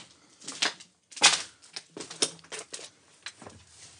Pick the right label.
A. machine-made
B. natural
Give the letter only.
B